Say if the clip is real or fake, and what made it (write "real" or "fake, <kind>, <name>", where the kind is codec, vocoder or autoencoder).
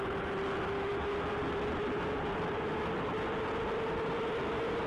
real